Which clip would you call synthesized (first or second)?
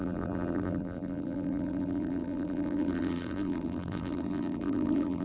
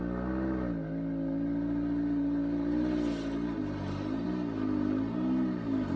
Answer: first